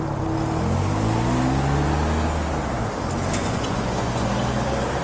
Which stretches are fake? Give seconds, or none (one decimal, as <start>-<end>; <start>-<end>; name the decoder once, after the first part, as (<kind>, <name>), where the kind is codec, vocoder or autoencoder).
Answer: 3.4-4.3 (vocoder, Vocos)

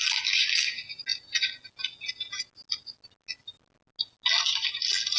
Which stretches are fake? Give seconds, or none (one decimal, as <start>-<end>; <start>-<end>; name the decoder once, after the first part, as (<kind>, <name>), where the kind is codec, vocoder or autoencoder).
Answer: none

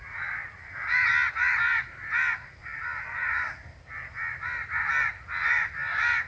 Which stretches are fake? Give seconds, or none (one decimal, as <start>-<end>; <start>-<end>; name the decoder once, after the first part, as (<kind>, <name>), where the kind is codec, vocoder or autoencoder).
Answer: none

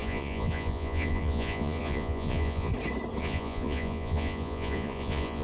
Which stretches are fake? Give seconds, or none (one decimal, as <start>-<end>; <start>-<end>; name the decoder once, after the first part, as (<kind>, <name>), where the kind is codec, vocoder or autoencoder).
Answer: 0.0-2.7 (vocoder, Vocos); 3.2-5.4

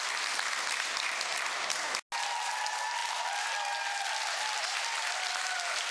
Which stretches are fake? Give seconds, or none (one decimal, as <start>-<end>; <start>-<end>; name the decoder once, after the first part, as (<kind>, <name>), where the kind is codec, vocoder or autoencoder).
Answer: none